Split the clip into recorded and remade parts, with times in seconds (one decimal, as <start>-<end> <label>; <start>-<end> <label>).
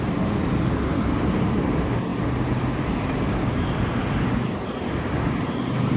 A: 0.0-6.0 recorded